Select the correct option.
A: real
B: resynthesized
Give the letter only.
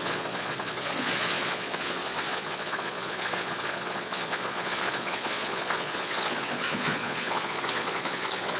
B